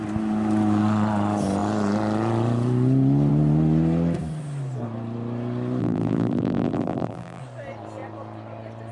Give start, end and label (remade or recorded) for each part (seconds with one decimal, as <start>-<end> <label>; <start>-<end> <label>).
0.0-5.8 recorded; 5.8-7.4 remade; 7.4-8.9 recorded